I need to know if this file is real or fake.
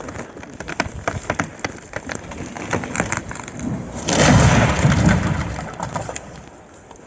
real